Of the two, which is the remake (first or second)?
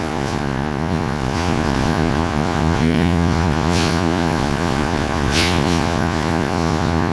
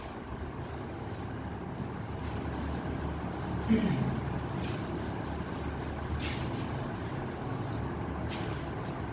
first